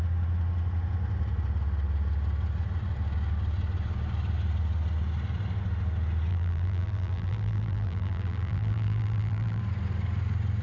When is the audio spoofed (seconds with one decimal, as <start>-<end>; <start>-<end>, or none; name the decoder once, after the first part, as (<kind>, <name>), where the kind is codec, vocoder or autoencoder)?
6.3-9.6 (vocoder, BigVGAN v2)